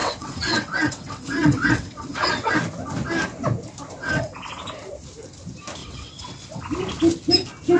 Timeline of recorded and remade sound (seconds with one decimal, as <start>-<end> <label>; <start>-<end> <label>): 0.0-2.5 remade; 2.5-4.0 recorded; 4.0-4.6 remade; 4.6-5.8 recorded; 5.8-6.6 remade; 6.6-7.8 recorded